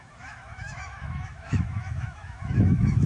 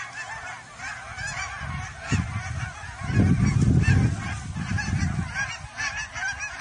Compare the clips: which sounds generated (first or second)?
first